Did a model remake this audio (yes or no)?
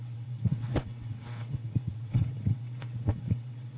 yes